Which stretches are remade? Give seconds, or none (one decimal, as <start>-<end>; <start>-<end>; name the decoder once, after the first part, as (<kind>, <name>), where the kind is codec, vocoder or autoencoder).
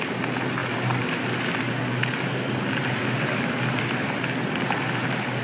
none